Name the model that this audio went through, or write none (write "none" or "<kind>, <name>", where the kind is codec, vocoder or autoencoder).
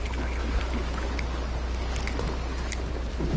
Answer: none